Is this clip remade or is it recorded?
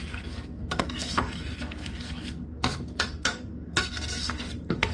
remade